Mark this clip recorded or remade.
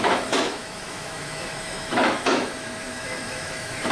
remade